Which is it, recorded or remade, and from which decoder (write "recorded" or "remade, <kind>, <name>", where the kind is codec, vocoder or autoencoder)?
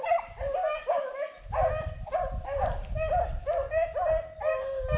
recorded